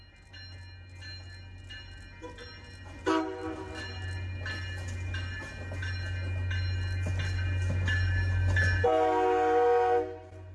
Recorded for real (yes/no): yes